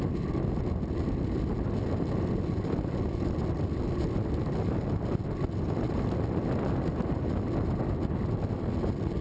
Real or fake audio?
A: real